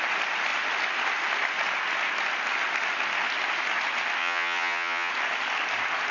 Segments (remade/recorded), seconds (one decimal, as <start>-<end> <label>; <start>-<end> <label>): 0.0-4.2 recorded; 4.2-5.1 remade; 5.1-6.1 recorded